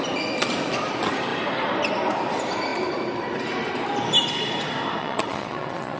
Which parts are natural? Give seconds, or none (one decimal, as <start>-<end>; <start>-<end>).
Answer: 0.0-5.0